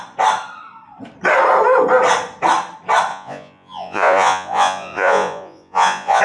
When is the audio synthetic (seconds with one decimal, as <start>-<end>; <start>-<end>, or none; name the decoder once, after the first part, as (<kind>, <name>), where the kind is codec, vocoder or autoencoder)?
3.1-6.2 (vocoder, Vocos)